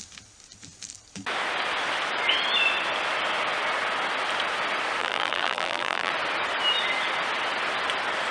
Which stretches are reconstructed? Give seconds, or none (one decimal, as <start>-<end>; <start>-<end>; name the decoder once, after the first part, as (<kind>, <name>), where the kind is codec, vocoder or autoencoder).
5.0-6.1 (vocoder, BigVGAN v2)